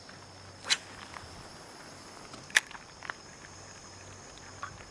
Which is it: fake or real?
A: real